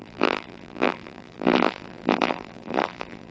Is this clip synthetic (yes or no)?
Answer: yes